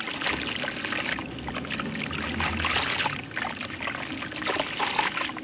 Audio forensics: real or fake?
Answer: real